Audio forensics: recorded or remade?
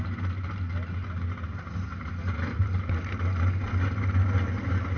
recorded